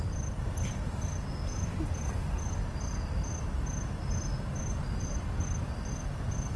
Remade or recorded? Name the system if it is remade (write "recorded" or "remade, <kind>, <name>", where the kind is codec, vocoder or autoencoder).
recorded